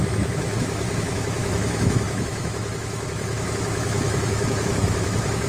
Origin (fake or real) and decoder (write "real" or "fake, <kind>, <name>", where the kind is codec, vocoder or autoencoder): fake, autoencoder, DAC-VAE